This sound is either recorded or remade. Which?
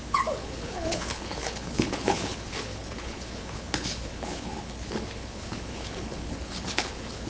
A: remade